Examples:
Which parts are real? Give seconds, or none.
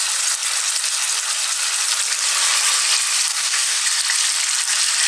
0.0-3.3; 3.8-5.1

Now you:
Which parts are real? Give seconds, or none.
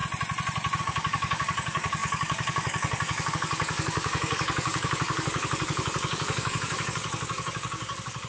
0.0-0.8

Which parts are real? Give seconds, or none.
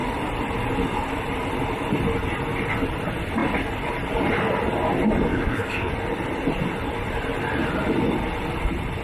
0.0-5.3; 5.9-9.0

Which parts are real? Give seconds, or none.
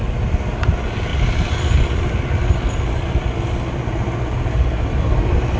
0.0-5.6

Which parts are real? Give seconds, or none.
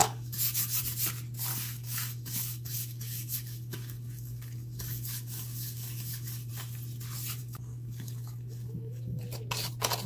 0.8-1.5; 6.5-7.4; 9.2-10.1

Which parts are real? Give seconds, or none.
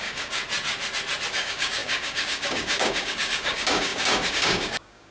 0.4-1.3